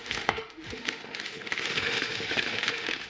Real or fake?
fake